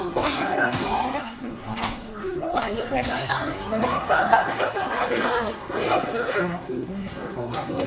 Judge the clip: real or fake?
fake